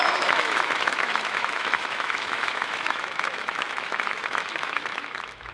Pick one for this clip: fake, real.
fake